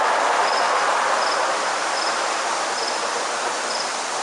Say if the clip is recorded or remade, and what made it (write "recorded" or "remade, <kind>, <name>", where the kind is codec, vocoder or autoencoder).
recorded